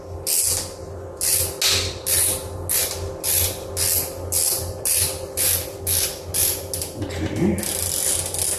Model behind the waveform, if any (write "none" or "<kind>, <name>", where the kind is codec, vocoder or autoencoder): none